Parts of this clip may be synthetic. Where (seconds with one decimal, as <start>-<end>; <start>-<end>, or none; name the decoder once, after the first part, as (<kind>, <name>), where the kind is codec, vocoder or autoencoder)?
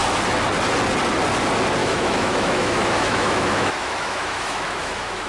1.8-5.3 (autoencoder, DAC-VAE)